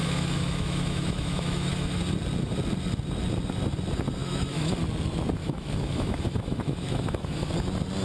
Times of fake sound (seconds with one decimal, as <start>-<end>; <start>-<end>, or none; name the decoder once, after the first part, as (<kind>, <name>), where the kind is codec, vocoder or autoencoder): 0.0-2.0 (autoencoder, DAC-VAE); 4.2-4.7; 5.4-7.5